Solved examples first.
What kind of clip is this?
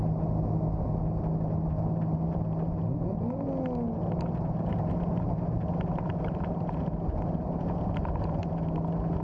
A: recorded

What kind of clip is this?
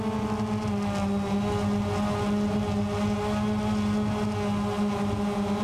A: recorded